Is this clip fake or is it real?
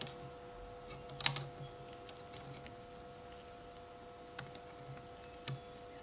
real